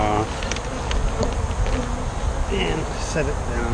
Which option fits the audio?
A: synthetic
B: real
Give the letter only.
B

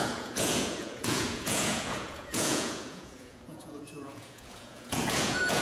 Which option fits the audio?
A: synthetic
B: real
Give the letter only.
A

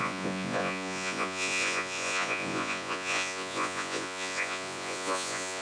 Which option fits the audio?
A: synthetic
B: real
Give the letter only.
A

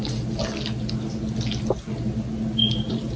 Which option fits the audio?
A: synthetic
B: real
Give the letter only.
B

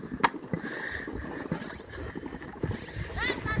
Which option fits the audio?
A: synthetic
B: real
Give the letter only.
B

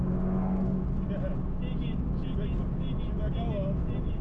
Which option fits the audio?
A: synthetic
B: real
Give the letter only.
B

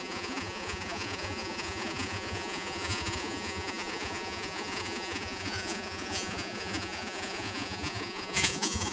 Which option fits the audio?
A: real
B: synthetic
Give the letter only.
B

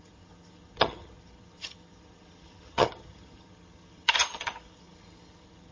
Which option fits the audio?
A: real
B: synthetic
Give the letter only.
B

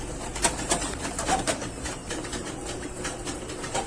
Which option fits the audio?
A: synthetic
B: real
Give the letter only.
A